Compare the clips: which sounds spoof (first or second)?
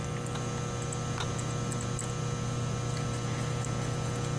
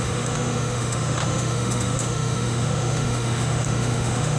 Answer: second